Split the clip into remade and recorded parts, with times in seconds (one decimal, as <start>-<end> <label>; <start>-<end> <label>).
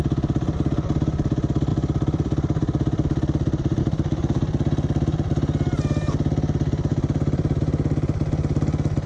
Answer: 0.0-1.7 recorded; 1.7-3.8 remade; 3.8-6.9 recorded; 6.9-7.6 remade; 7.6-9.1 recorded